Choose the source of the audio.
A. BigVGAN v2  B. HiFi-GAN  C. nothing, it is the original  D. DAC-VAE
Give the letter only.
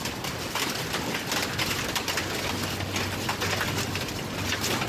C